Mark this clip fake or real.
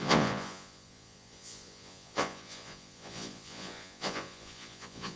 fake